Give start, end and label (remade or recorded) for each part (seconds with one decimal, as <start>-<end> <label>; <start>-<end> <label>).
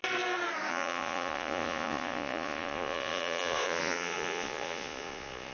0.0-0.7 recorded; 0.7-5.5 remade